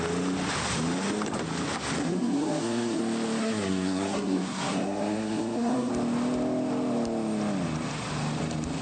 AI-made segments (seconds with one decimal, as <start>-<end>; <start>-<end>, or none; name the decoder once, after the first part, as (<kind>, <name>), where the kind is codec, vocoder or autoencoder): 2.0-3.0 (codec, SNAC); 3.4-5.9